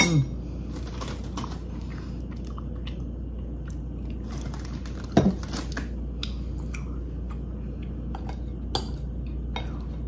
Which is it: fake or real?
real